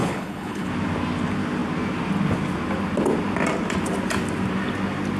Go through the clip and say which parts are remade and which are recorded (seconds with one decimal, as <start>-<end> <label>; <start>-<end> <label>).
0.0-0.7 remade; 0.7-5.2 recorded